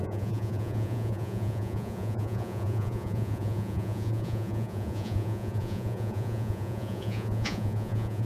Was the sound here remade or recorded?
remade